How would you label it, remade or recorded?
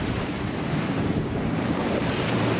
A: remade